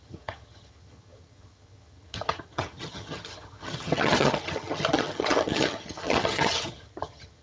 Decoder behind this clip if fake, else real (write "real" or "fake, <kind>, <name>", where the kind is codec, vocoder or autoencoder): fake, vocoder, HiFi-GAN